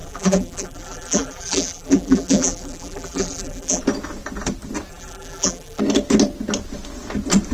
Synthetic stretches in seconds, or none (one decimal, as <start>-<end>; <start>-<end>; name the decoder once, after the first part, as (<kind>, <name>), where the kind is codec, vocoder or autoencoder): 0.0-3.8 (vocoder, BigVGAN v2); 4.9-5.8